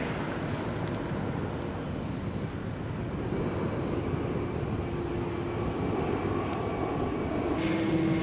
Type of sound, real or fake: real